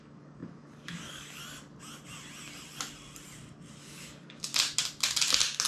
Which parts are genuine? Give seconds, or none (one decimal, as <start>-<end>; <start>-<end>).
1.4-3.8; 4.5-5.7